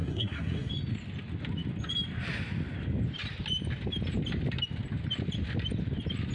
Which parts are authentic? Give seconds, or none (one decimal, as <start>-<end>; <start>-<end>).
0.7-6.3